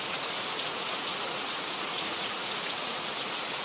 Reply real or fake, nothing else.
fake